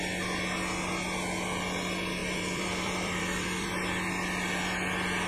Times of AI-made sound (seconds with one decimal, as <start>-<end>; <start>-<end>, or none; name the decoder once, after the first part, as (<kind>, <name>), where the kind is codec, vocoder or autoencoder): 2.2-3.7 (vocoder, BigVGAN v2)